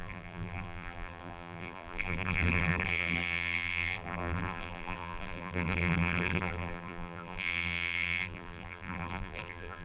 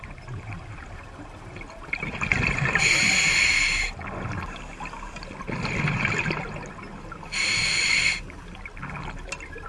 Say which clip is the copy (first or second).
first